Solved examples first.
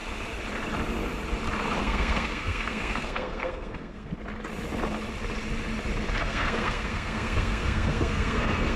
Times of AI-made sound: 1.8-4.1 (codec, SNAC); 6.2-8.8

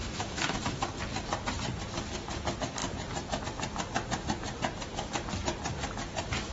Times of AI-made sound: 0.0-0.6 (autoencoder, DAC-VAE)

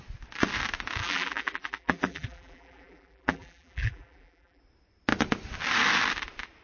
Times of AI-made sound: 1.0-4.6 (vocoder, BigVGAN v2)

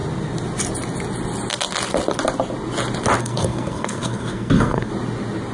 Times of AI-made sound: 3.2-4.9 (codec, SNAC)

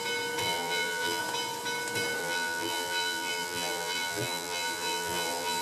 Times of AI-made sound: 0.4-1.2 (vocoder, BigVGAN v2); 2.2-5.6

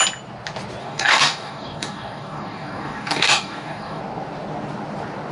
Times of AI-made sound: 0.8-4.0 (codec, DAC)